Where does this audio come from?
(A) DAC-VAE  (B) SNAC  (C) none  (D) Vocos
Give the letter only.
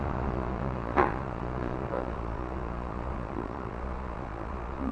D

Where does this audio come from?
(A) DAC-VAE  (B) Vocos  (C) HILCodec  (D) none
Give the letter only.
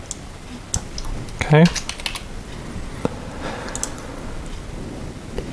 D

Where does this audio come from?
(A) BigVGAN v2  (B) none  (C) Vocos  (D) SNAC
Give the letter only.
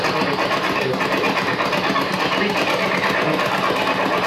B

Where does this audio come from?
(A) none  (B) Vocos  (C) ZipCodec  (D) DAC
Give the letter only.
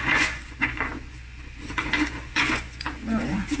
B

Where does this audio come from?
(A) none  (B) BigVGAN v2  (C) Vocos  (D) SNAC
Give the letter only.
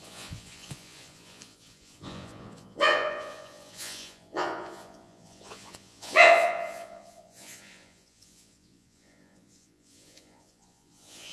C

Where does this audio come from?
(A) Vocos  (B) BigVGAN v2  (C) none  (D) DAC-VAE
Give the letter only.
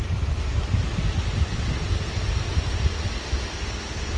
C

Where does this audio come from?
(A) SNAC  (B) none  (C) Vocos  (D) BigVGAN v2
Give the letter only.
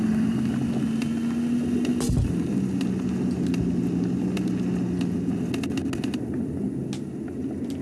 B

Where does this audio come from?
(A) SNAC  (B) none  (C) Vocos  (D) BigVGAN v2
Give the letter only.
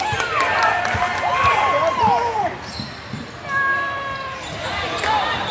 B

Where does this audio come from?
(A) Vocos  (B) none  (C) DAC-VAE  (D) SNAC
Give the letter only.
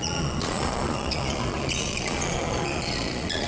A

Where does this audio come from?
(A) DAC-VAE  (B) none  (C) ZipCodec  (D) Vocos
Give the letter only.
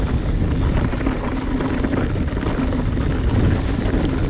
B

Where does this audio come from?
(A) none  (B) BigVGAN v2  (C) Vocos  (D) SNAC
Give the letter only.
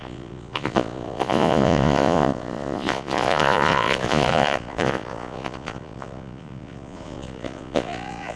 C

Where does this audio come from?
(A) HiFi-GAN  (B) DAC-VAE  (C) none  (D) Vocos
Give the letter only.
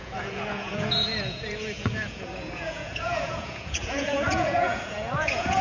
D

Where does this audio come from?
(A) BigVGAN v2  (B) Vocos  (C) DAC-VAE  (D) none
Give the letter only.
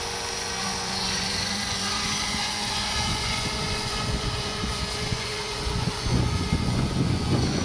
B